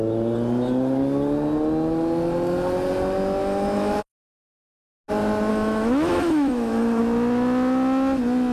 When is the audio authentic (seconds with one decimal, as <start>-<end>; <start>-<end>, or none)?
0.0-3.4; 4.6-5.5; 7.0-8.5